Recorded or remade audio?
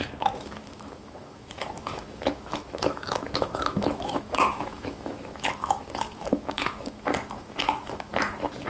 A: remade